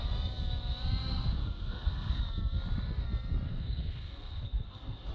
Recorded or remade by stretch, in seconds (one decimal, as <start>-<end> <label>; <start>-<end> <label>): 0.0-1.0 recorded; 1.0-2.2 remade; 2.2-3.5 recorded; 3.5-5.1 remade